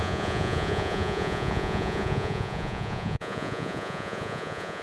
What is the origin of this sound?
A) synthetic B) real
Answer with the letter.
A